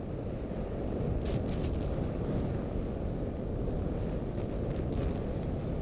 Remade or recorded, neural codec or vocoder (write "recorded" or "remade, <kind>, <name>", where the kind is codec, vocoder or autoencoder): recorded